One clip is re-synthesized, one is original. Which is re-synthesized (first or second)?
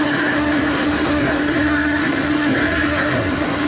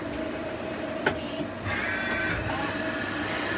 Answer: first